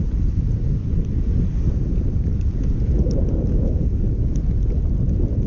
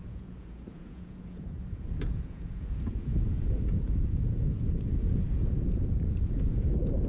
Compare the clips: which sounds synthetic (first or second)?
second